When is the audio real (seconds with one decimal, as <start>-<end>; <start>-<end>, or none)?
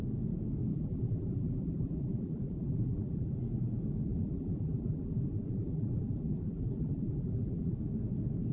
0.0-0.7; 3.3-4.1; 7.7-8.5